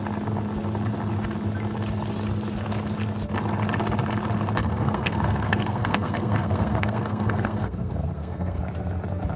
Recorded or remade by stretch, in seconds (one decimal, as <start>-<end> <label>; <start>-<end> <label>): 0.0-4.6 recorded; 4.6-8.6 remade; 8.6-9.4 recorded